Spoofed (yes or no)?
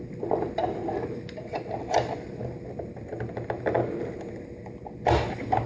no